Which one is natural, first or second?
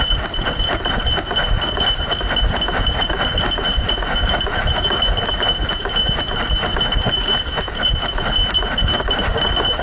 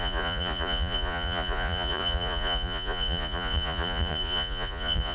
first